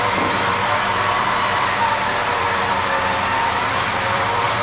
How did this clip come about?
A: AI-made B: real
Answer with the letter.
A